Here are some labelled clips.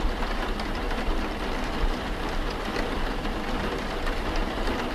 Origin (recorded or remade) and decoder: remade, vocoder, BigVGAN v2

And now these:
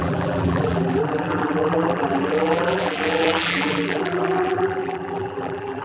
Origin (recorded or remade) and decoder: remade, vocoder, BigVGAN v2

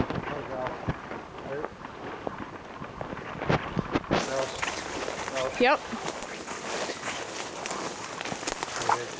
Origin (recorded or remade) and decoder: recorded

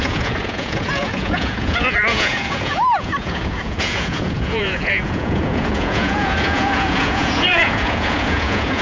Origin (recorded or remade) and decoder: remade, vocoder, Vocos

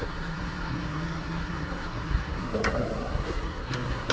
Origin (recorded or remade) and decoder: remade, codec, SNAC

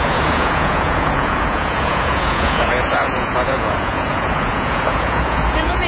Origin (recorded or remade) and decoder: remade, vocoder, Vocos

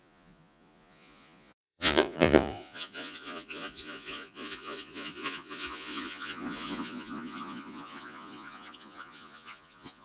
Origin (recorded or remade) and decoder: remade, vocoder, Vocos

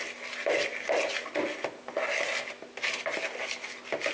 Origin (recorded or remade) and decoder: recorded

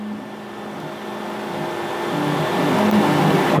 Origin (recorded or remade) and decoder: recorded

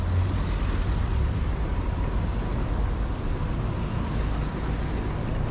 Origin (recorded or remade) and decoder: recorded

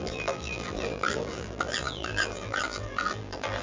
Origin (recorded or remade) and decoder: remade, vocoder, BigVGAN v2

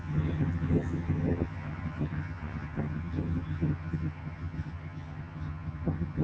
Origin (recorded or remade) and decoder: remade, vocoder, HiFi-GAN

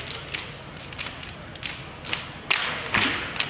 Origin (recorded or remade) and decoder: recorded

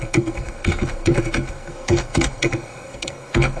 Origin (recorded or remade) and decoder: remade, codec, SNAC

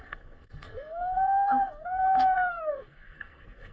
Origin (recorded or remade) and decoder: remade, codec, SNAC